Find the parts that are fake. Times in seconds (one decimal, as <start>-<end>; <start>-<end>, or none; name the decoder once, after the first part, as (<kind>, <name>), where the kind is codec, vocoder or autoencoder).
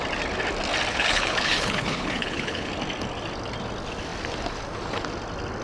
0.9-2.7 (codec, HILCodec)